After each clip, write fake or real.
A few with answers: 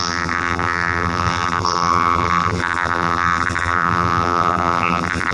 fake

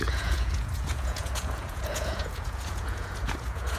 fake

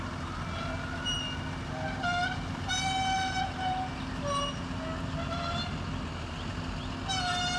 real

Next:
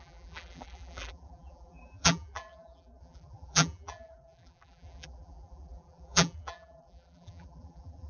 fake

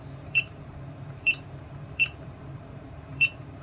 fake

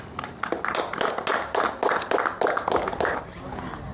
real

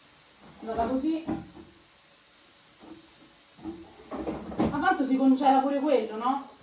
real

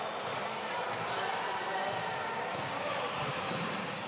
real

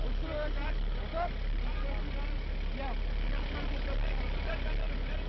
real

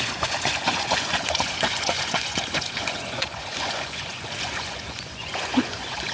fake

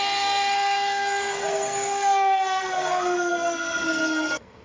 fake